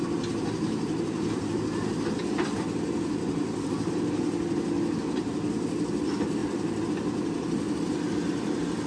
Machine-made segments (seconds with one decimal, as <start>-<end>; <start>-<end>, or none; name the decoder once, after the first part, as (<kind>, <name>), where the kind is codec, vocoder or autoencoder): none

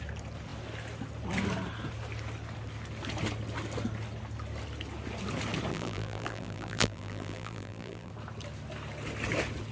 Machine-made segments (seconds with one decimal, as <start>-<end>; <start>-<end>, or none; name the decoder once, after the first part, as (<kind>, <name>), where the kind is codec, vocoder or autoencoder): 5.7-8.1 (vocoder, BigVGAN v2)

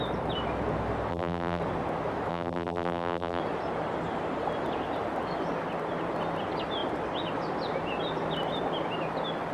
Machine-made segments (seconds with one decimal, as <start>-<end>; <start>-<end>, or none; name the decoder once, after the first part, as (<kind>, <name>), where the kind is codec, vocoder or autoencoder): 1.1-1.6 (vocoder, BigVGAN v2); 2.3-3.4

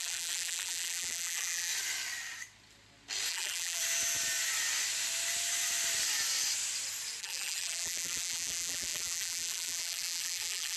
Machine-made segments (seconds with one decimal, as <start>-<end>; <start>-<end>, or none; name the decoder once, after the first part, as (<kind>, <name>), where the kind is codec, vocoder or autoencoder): 0.0-1.7 (vocoder, BigVGAN v2); 3.3-3.8; 7.2-10.8

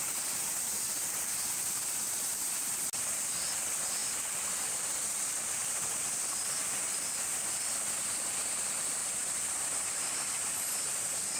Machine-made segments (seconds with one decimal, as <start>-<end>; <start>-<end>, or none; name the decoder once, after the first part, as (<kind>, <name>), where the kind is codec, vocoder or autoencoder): 0.0-2.7 (vocoder, BigVGAN v2); 4.0-6.2; 9.0-11.4